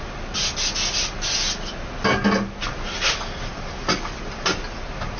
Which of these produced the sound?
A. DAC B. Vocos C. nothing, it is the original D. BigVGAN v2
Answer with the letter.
C